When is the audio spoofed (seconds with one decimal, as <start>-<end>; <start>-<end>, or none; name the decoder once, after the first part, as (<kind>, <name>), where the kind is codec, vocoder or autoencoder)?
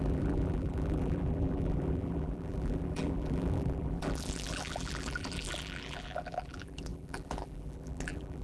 0.0-8.4 (vocoder, BigVGAN v2)